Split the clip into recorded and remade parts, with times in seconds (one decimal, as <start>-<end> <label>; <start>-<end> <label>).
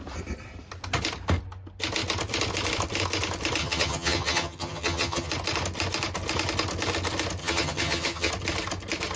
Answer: 0.0-3.6 recorded; 3.6-5.3 remade; 5.3-7.4 recorded; 7.4-8.3 remade; 8.3-9.2 recorded